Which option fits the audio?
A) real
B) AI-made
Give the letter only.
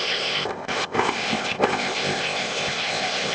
B